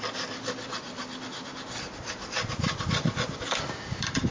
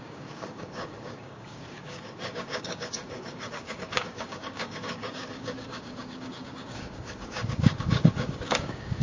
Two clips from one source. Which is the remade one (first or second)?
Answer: second